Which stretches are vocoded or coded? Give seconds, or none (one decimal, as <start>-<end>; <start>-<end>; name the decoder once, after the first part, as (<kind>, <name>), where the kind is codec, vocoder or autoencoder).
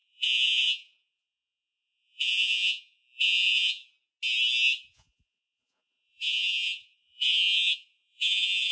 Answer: 0.0-3.8 (vocoder, Vocos); 4.9-8.7